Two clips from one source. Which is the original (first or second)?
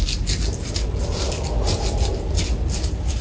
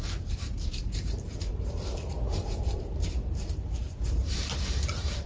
first